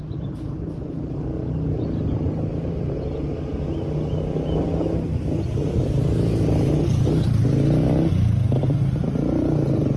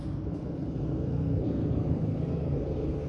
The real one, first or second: first